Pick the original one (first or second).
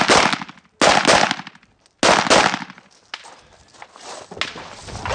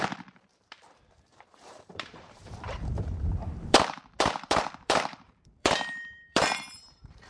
first